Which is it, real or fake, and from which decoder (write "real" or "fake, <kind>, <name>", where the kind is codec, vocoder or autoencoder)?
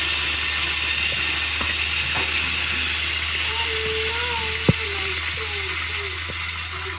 real